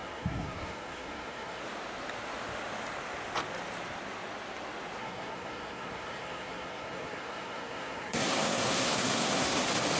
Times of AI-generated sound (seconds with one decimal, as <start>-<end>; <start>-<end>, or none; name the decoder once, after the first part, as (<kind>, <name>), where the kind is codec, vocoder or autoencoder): 0.0-1.6 (codec, SNAC); 5.0-9.6